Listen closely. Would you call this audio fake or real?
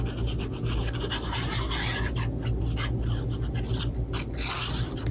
real